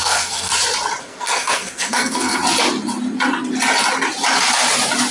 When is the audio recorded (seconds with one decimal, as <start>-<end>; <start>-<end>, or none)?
0.5-1.0; 2.4-5.1